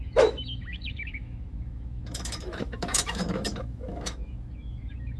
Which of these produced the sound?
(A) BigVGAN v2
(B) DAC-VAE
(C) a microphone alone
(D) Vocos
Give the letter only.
B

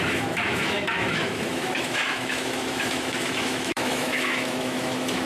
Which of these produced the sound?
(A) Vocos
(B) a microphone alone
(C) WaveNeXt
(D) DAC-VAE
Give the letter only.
D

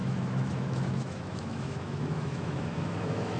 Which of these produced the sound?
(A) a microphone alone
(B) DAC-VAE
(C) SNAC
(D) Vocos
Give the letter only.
B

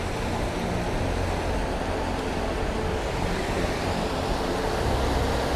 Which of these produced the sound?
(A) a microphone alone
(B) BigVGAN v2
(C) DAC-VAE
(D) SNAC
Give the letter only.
A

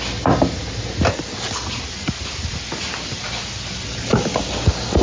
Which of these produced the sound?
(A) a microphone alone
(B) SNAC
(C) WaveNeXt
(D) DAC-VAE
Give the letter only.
A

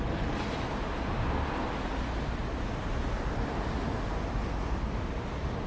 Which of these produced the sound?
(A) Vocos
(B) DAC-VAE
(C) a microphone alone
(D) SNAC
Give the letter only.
C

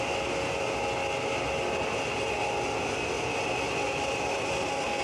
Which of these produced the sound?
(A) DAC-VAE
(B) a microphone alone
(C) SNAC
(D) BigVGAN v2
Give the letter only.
B